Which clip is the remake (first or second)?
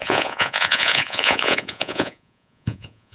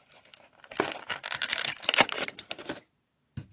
first